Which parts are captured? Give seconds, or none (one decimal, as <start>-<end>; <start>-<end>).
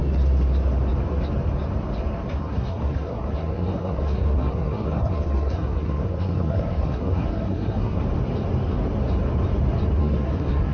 0.0-2.4; 8.0-10.0